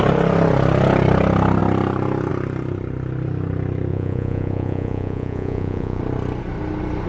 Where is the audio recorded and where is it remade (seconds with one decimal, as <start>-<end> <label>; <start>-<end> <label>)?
0.0-3.9 recorded; 3.9-6.0 remade; 6.0-7.1 recorded